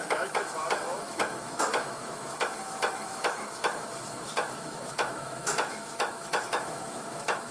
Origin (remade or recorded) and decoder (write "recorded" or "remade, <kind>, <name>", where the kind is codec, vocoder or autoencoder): remade, autoencoder, DAC-VAE